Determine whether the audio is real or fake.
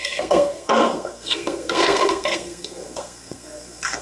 fake